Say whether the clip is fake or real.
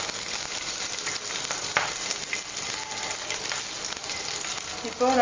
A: real